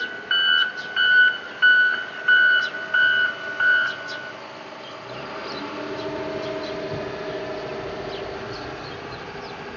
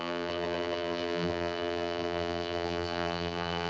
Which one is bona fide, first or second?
first